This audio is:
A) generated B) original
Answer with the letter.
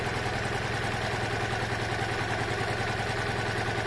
B